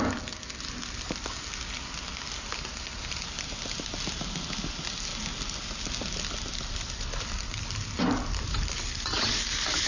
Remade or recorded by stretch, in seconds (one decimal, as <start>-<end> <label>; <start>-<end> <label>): 0.0-9.9 recorded